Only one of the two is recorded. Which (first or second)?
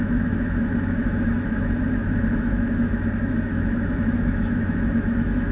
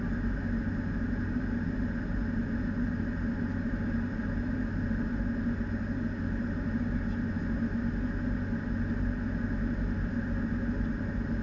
second